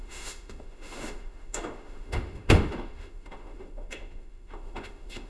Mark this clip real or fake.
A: fake